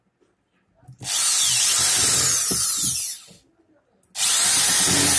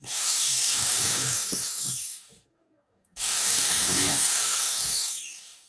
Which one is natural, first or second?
first